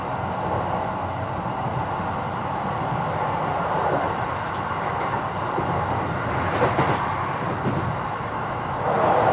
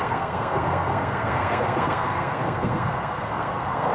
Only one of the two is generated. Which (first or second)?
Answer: second